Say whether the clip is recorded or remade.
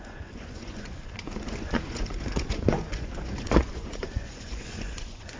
remade